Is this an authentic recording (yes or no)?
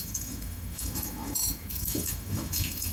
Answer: no